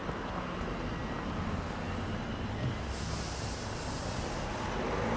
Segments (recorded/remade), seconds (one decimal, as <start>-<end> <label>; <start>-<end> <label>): 0.0-5.2 recorded

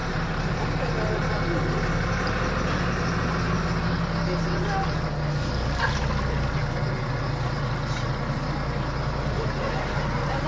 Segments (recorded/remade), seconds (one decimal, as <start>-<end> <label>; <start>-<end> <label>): 0.0-0.6 remade; 0.6-10.5 recorded